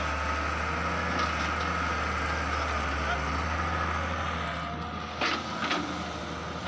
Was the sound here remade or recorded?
recorded